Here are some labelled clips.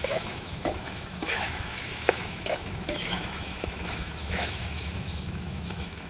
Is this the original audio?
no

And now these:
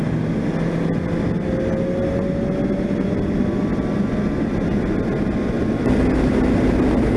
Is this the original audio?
yes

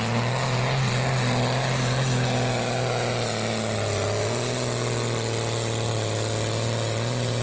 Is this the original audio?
yes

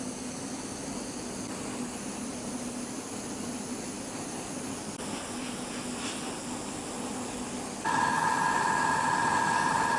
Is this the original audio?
yes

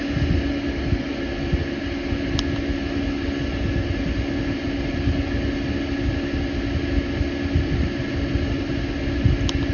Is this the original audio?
yes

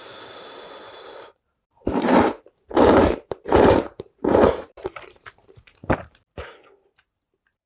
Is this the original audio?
no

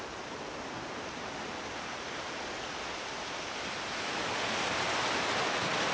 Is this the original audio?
yes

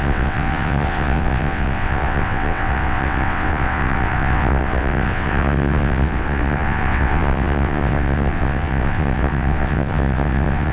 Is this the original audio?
no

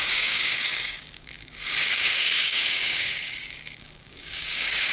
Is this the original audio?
no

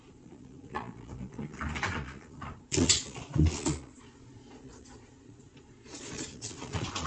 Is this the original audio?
no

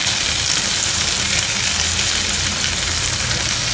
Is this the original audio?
yes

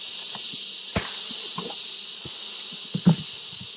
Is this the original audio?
yes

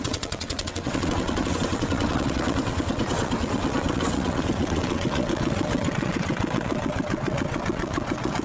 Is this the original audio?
no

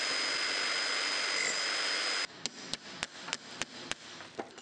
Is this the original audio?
yes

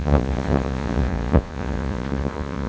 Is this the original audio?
no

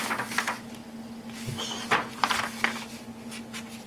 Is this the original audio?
yes